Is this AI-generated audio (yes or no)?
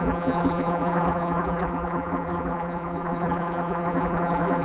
yes